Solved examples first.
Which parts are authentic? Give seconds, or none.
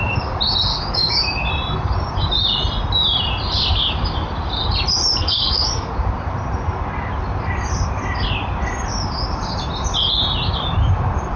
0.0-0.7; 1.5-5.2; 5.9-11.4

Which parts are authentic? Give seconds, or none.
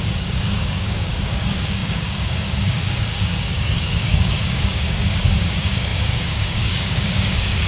none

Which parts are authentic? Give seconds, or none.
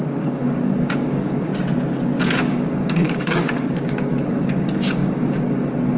1.5-2.4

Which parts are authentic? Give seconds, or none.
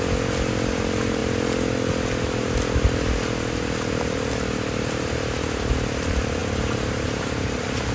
0.0-7.9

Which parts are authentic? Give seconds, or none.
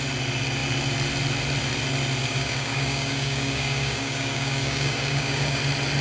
0.0-2.2; 5.6-6.0